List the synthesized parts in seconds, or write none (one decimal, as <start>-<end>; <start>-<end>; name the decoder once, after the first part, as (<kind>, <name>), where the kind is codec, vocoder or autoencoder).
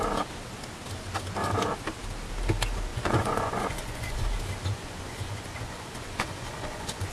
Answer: 2.9-4.3 (vocoder, Vocos); 4.7-7.1